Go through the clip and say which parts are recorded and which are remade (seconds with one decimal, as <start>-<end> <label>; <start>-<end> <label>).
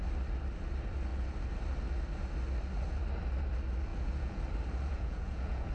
0.0-3.9 recorded; 3.9-4.4 remade; 4.4-4.9 recorded; 4.9-5.7 remade